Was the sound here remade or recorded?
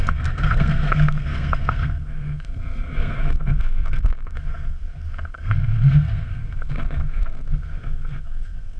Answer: remade